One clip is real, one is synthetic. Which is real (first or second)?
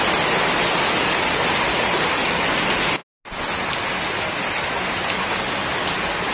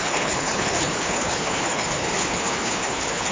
first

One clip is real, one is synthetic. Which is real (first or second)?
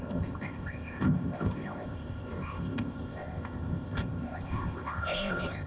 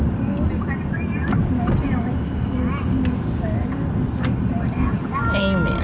second